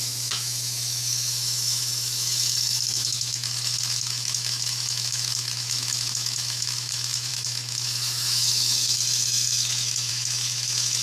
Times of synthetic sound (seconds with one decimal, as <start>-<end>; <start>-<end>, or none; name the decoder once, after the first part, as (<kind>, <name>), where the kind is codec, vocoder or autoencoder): 0.0-11.0 (autoencoder, DAC-VAE)